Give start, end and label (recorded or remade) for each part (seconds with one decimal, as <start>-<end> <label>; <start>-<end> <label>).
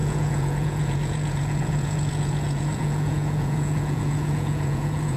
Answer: 0.0-5.2 remade